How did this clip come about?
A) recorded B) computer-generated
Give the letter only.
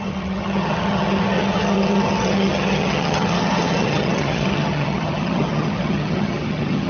B